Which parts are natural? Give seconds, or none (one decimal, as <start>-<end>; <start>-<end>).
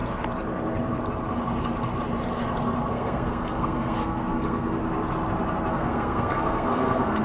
0.0-2.9; 4.8-5.7